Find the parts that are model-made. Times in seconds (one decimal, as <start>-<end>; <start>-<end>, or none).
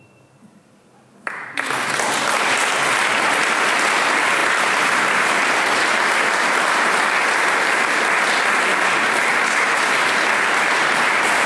4.4-5.3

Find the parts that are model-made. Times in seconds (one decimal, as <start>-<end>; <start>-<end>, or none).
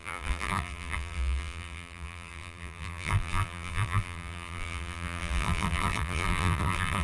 0.0-7.0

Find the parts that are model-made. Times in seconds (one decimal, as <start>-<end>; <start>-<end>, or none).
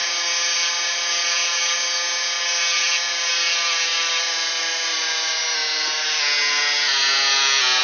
none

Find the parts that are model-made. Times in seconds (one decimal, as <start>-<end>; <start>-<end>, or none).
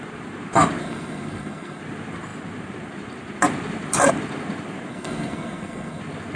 0.8-1.8; 4.9-6.0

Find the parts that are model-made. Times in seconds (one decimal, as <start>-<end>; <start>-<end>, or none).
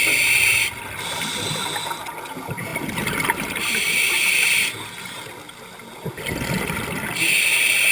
2.7-4.5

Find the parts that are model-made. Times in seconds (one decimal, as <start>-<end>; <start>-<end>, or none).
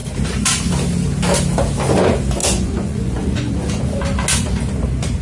2.4-3.8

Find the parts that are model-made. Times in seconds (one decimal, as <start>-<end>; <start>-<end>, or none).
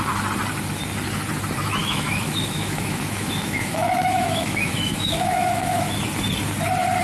1.8-6.0